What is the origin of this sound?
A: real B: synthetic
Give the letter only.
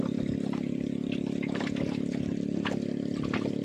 A